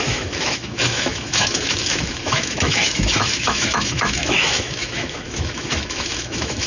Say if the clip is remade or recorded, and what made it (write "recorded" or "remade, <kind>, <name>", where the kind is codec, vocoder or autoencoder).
remade, autoencoder, DAC-VAE